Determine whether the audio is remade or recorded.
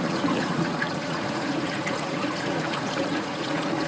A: remade